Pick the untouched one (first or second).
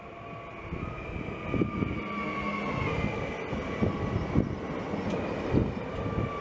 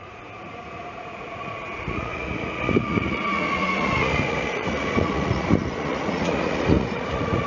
first